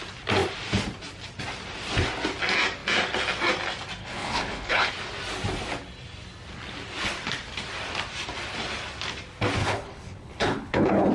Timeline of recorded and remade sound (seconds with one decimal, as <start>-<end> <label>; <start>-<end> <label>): 0.0-4.0 recorded; 4.0-4.9 remade; 4.9-9.6 recorded; 9.6-11.1 remade